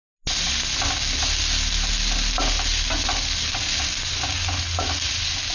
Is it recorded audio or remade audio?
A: recorded